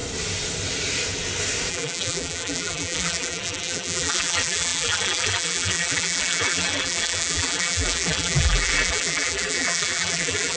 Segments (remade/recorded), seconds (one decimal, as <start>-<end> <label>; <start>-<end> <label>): 0.0-1.7 recorded; 1.7-10.6 remade